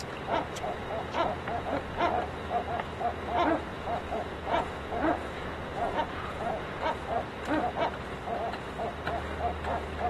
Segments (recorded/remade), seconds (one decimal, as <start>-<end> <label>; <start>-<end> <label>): 0.0-0.4 recorded; 0.4-2.1 remade; 2.1-3.7 recorded; 3.7-6.8 remade; 6.8-10.1 recorded

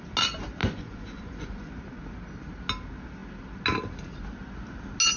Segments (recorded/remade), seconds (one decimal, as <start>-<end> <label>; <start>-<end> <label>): 0.0-0.6 recorded; 0.6-1.7 remade; 1.7-5.2 recorded

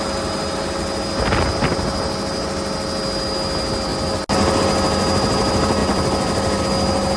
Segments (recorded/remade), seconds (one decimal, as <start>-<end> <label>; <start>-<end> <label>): 0.0-7.2 recorded

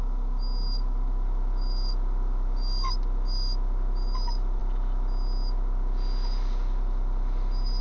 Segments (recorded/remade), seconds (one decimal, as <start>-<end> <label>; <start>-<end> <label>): 0.0-7.8 recorded

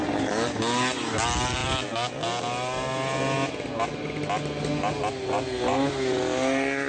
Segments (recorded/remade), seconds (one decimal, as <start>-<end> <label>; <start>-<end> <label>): 0.0-6.9 recorded

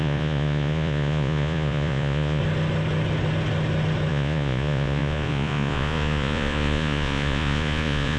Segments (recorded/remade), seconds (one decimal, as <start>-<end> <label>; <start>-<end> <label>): 0.0-2.4 remade; 2.4-4.1 recorded; 4.1-8.2 remade

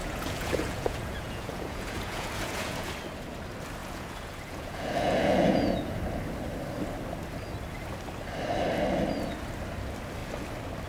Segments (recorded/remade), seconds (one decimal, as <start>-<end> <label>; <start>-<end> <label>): 0.0-2.9 remade; 2.9-3.8 recorded; 3.8-6.0 remade; 6.0-10.9 recorded